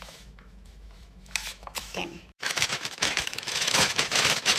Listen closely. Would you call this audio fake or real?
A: fake